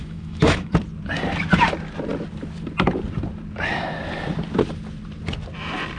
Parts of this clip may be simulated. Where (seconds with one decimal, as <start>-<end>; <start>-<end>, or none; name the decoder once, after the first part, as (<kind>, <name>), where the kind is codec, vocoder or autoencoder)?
0.0-0.7 (autoencoder, DAC-VAE)